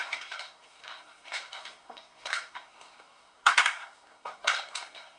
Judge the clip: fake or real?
fake